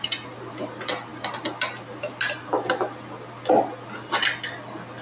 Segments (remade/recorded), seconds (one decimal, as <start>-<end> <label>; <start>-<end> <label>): 0.0-5.0 recorded